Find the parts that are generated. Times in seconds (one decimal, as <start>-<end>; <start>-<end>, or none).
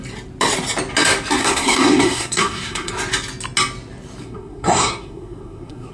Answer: 1.4-2.9; 4.2-5.9